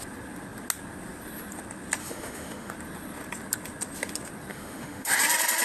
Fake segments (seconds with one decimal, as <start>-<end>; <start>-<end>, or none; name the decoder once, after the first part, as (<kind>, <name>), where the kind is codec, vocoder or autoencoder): 2.0-2.7 (autoencoder, DAC-VAE); 4.5-5.1